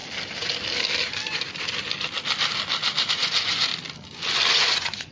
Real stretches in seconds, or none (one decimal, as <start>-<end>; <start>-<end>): 0.0-3.1; 3.7-4.5